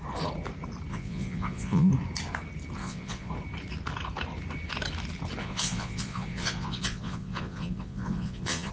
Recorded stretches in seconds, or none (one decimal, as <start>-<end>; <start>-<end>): 0.0-0.9; 1.9-2.8; 3.3-5.4